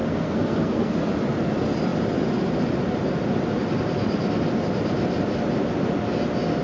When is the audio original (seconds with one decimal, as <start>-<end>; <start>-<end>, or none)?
1.1-6.6